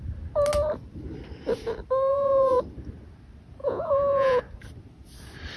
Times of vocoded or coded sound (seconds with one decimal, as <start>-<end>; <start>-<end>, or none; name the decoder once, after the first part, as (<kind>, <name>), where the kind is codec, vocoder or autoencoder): 2.1-2.6 (vocoder, Vocos); 3.6-4.4